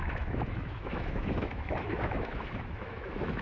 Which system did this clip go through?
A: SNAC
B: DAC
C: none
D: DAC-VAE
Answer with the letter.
D